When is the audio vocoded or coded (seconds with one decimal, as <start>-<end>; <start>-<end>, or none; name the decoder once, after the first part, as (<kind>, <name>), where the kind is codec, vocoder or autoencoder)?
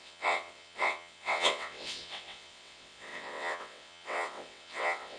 0.0-5.2 (vocoder, WaveNeXt)